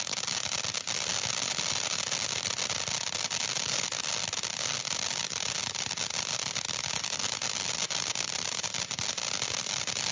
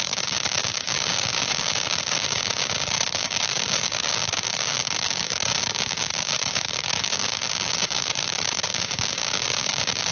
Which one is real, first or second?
first